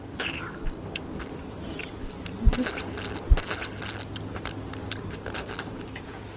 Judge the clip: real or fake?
real